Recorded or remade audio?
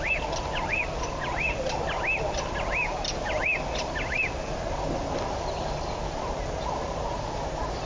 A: recorded